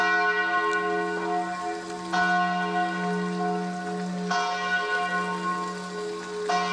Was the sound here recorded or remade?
recorded